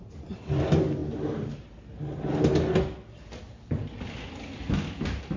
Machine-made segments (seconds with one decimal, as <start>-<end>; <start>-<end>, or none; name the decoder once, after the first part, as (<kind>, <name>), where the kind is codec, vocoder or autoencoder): none